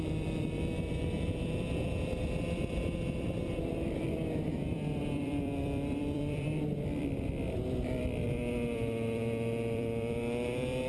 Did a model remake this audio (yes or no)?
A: yes